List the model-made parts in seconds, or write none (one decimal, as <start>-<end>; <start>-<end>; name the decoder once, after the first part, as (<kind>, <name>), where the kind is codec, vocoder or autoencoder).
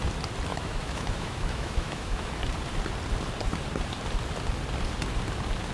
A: 0.5-2.3 (autoencoder, DAC-VAE)